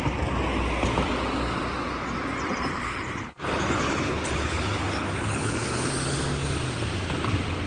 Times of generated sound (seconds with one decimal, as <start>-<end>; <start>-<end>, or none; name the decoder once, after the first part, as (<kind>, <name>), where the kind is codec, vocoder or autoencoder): 2.7-5.9 (codec, HILCodec)